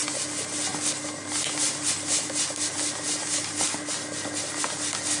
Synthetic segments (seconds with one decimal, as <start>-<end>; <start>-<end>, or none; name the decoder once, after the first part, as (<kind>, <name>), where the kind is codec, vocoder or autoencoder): none